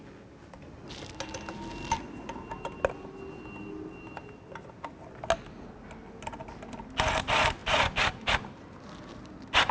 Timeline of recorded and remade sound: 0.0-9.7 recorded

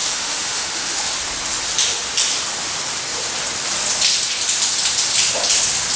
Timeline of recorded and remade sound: 0.0-1.1 remade; 1.1-6.0 recorded